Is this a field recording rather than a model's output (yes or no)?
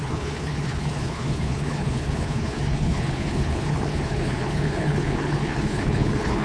no